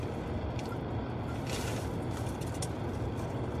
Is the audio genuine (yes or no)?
yes